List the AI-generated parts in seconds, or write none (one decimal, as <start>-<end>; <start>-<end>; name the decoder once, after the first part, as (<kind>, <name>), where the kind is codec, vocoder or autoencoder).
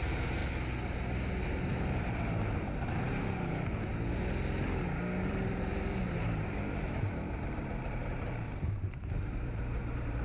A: 0.0-0.4 (vocoder, BigVGAN v2); 3.0-3.9; 5.3-10.2